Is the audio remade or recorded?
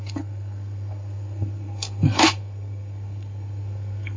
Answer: remade